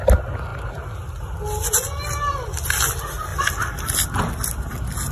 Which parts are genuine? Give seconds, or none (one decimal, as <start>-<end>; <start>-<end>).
0.0-5.1